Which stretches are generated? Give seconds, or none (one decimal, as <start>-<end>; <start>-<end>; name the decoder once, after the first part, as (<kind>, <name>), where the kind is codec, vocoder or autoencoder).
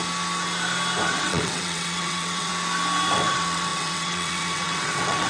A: 1.1-2.5 (vocoder, WaveNeXt); 3.1-5.3